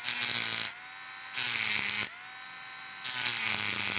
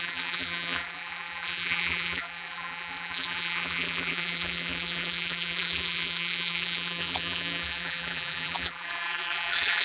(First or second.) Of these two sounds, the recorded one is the first